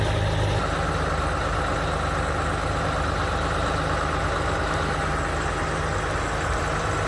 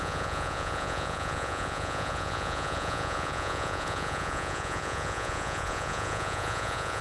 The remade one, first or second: second